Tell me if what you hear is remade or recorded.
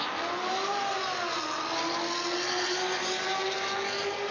recorded